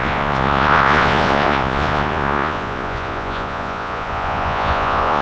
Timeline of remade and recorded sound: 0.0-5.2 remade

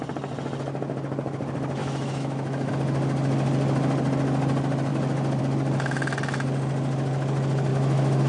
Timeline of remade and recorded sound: 0.0-1.8 recorded; 1.8-2.7 remade; 2.7-7.7 recorded; 7.7-8.3 remade

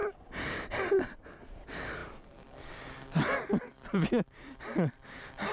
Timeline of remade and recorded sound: 0.0-5.5 recorded

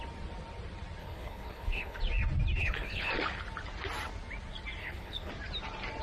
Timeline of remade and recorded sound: 0.0-1.0 recorded; 1.0-2.0 remade; 2.0-2.6 recorded; 2.6-3.1 remade; 3.1-4.8 recorded; 4.8-5.3 remade; 5.3-6.0 recorded

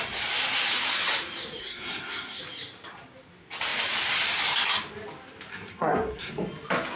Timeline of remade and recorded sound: 0.0-1.6 recorded; 1.6-2.4 remade; 2.4-5.5 recorded; 5.5-6.3 remade; 6.3-7.0 recorded

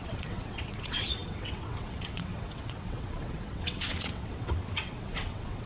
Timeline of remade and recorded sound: 0.0-5.7 remade

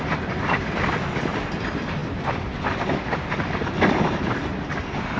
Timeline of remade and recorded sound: 0.0-5.2 recorded

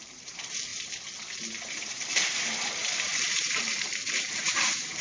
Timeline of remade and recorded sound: 0.0-0.7 remade; 0.7-1.7 recorded; 1.7-5.0 remade